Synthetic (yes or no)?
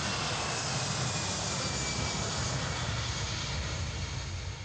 no